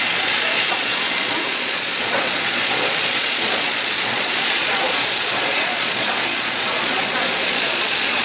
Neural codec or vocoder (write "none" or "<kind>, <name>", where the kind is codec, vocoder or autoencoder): vocoder, Vocos